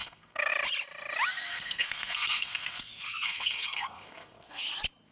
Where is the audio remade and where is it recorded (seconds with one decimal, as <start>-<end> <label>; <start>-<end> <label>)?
0.0-0.5 remade; 0.5-1.5 recorded; 1.5-4.6 remade; 4.6-5.1 recorded